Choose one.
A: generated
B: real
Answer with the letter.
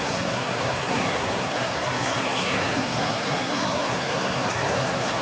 A